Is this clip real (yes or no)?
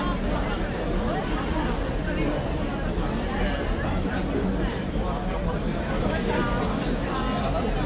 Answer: yes